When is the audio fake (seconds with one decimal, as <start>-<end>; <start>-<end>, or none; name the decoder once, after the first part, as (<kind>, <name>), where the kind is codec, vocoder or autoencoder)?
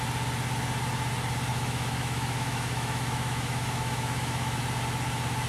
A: 1.5-4.6 (autoencoder, DAC-VAE)